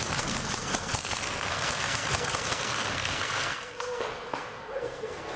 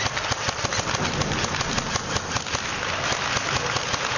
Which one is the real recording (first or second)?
second